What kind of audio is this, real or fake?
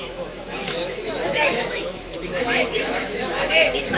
fake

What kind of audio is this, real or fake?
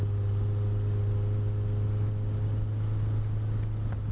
real